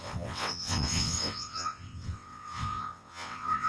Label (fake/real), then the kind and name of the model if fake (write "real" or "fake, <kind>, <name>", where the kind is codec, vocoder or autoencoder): fake, vocoder, WaveNeXt